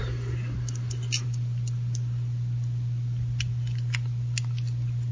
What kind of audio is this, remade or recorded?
recorded